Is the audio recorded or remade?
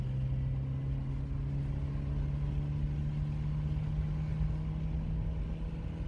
recorded